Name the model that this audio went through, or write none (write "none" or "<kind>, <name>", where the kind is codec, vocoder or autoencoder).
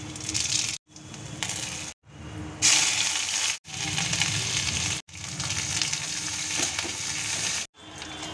none